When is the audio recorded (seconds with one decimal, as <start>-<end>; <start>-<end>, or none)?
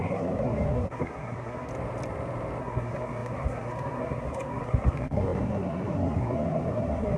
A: 1.7-2.6